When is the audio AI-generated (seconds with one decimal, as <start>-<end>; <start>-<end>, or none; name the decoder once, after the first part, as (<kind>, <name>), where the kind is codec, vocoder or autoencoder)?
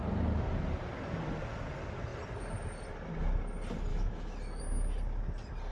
3.9-4.6 (autoencoder, DAC-VAE)